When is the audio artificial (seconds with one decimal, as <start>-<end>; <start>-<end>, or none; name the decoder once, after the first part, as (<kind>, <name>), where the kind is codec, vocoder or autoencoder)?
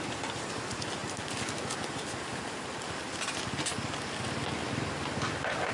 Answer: none